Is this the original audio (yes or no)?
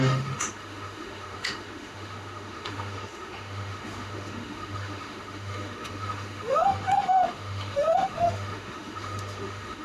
no